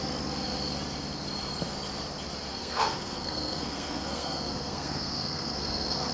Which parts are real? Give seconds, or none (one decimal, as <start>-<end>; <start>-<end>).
0.0-2.5